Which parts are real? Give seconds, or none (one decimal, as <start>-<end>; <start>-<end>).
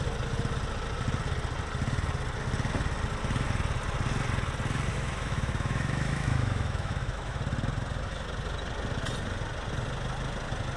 0.0-4.9; 7.4-10.8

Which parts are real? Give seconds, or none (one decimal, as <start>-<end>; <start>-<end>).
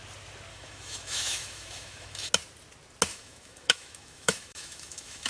0.0-0.5; 2.3-3.1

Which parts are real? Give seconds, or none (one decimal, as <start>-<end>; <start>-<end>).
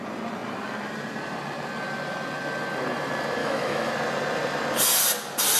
0.0-3.4; 3.9-5.6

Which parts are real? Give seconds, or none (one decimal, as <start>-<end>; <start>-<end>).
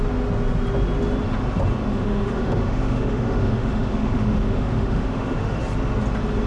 0.0-1.9; 5.6-6.5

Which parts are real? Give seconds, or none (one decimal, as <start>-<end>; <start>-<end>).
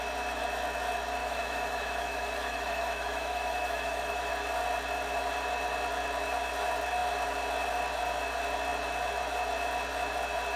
0.0-1.2; 4.3-10.6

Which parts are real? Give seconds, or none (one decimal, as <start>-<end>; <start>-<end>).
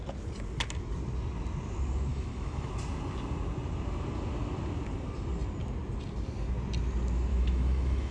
0.0-2.1; 2.7-7.3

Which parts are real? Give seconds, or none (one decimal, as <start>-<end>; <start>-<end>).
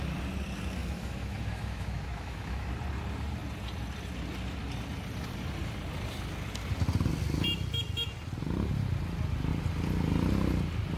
0.0-0.8; 2.7-11.0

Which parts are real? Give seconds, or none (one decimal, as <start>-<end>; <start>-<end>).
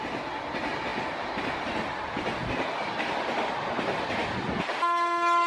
0.0-5.5